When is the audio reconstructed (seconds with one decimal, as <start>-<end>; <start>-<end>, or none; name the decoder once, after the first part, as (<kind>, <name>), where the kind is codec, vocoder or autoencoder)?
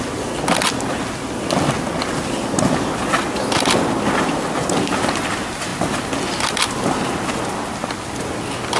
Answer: none